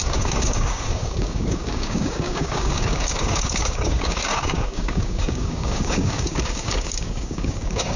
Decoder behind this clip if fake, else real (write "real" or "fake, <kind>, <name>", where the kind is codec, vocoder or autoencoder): fake, codec, DAC